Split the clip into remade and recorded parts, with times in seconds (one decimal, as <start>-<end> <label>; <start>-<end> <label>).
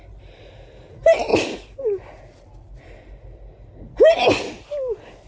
0.0-5.3 recorded